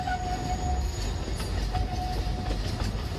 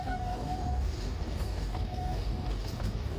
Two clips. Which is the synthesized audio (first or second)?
second